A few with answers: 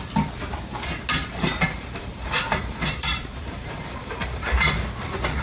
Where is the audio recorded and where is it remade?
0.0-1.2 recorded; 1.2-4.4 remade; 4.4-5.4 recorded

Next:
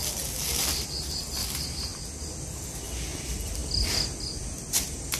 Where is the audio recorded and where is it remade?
0.0-1.3 recorded; 1.3-1.9 remade; 1.9-2.8 recorded; 2.8-5.2 remade

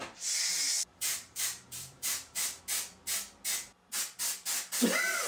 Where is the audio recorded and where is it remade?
0.0-0.7 recorded; 0.7-2.6 remade; 2.6-5.3 recorded